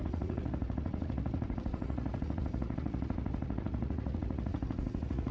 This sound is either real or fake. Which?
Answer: fake